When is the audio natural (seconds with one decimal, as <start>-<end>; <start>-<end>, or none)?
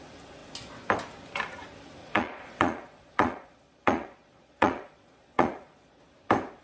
0.0-2.0; 6.0-6.6